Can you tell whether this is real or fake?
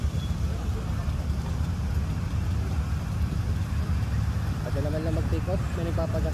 real